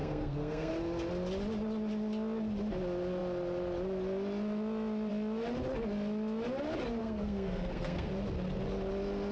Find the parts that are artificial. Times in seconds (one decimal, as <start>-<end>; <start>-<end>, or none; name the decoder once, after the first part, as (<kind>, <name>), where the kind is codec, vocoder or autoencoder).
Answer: 0.0-0.7 (codec, SNAC); 7.0-8.1